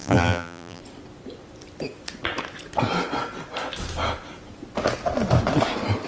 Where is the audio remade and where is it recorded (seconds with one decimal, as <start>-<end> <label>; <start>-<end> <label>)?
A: 0.0-0.8 remade; 0.8-6.1 recorded